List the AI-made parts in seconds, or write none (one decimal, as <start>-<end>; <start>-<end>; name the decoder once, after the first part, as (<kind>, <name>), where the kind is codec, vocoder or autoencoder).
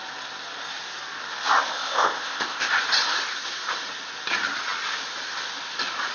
1.7-2.7 (codec, ZipCodec)